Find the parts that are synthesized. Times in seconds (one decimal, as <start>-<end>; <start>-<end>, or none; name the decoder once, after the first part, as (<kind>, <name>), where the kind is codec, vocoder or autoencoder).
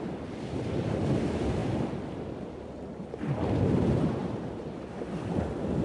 none